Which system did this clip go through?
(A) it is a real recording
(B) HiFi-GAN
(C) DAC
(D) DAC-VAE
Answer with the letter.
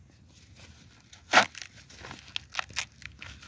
A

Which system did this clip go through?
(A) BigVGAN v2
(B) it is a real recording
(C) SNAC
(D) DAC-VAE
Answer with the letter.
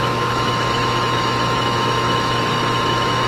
D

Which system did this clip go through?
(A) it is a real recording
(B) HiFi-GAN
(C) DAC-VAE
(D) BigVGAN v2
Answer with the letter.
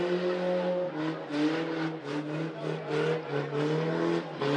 A